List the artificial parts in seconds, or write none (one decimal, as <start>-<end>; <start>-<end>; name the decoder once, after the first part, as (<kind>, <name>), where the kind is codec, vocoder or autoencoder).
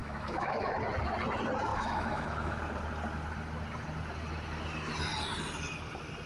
0.0-0.8 (autoencoder, DAC-VAE); 1.7-2.6